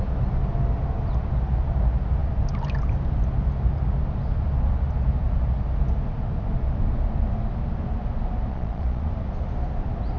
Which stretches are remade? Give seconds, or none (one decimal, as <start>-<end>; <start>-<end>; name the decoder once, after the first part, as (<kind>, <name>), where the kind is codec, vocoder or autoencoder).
8.5-9.1 (vocoder, Vocos)